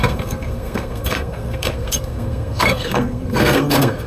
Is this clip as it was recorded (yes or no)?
no